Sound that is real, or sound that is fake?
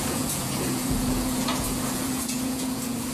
fake